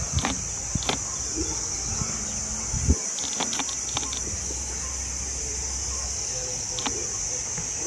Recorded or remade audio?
recorded